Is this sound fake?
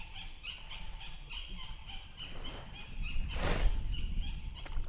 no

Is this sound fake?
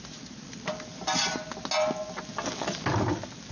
no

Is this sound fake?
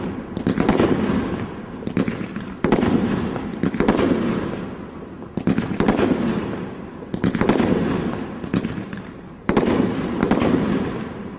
no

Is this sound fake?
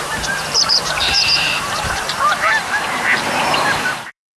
yes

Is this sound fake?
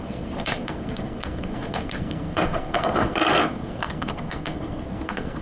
yes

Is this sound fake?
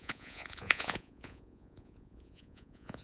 yes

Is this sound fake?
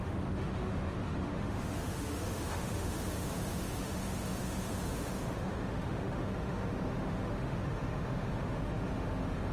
yes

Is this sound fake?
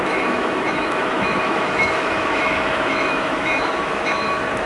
yes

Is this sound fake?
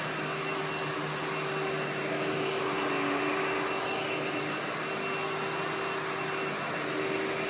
no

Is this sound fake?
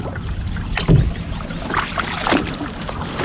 no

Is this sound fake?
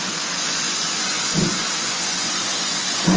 yes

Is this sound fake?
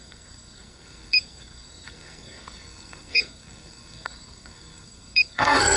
yes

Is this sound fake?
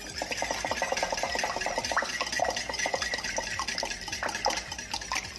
no